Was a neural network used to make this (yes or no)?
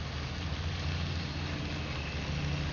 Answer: no